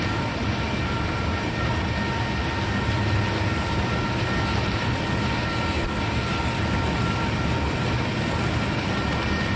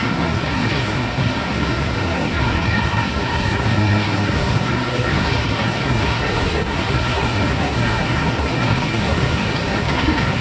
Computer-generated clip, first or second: second